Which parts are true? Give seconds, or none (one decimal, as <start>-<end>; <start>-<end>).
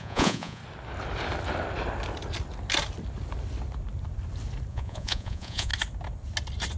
0.6-4.7; 5.7-6.8